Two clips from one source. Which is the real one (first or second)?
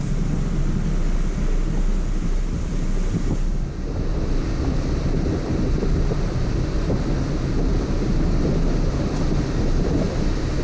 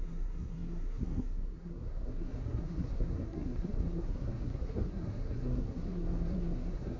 first